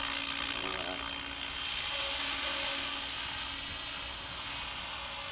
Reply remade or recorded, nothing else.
recorded